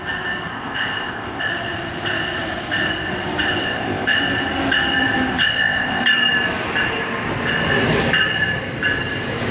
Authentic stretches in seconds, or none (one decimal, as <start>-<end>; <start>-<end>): 0.0-0.5; 1.5-3.6; 4.2-5.4; 6.0-9.5